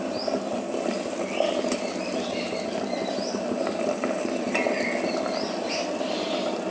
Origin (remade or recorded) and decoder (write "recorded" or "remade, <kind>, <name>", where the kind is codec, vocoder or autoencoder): recorded